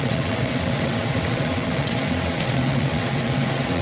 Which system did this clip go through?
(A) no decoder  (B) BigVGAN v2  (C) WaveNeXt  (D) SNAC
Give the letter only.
C